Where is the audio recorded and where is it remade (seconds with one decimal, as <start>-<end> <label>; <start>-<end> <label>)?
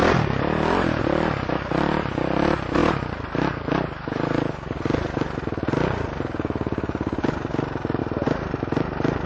0.0-9.3 recorded